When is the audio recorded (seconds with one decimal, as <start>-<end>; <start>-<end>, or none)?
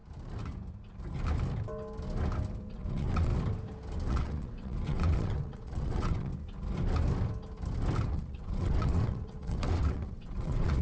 0.0-2.7; 3.3-4.1; 6.3-8.1